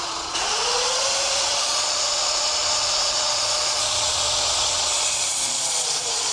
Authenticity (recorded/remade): remade